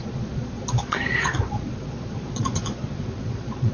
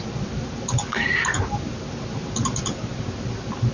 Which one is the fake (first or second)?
first